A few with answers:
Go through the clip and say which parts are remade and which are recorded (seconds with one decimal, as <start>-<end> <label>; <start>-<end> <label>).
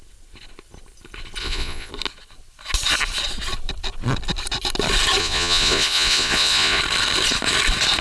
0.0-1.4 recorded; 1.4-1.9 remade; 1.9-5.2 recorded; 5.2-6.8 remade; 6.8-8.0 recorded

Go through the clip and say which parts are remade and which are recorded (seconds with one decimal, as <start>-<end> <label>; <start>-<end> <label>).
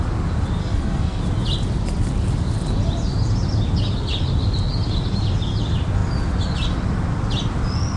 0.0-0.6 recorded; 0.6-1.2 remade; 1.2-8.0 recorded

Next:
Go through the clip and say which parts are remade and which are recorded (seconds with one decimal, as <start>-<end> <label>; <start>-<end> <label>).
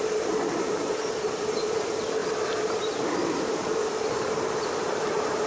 0.0-5.5 recorded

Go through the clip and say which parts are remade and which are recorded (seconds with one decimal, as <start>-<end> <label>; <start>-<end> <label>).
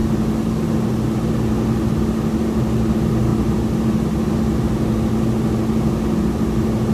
0.0-6.9 recorded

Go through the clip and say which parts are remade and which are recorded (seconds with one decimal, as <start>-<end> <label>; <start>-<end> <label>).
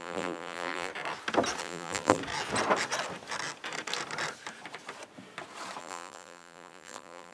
0.0-0.9 remade; 0.9-1.6 recorded; 1.6-2.2 remade; 2.2-5.8 recorded; 5.8-7.3 remade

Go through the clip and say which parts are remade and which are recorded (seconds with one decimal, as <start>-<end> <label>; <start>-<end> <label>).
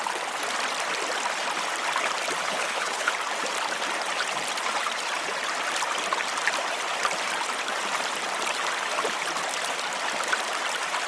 0.0-2.4 recorded; 2.4-3.1 remade; 3.1-11.1 recorded